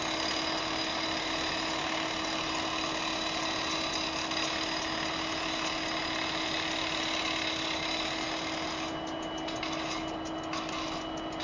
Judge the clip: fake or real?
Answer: real